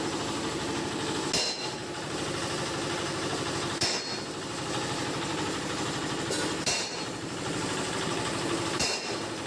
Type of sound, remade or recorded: recorded